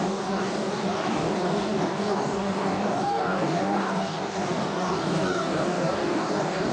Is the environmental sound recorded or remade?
remade